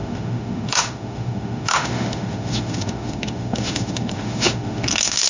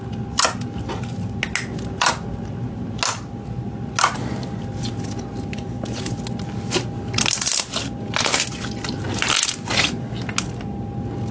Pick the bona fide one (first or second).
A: second